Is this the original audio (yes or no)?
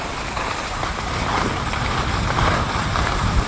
yes